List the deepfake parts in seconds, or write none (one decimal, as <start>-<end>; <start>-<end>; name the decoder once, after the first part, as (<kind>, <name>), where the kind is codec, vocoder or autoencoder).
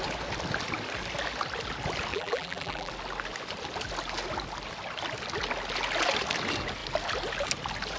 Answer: 2.1-2.9 (vocoder, BigVGAN v2)